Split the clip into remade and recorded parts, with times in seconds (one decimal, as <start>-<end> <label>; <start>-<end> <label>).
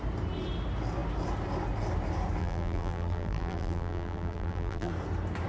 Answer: 0.0-2.4 recorded; 2.4-4.9 remade; 4.9-5.5 recorded